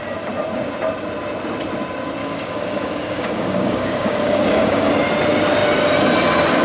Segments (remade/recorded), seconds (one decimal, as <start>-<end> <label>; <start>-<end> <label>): 0.0-2.2 recorded; 2.2-4.9 remade; 4.9-6.6 recorded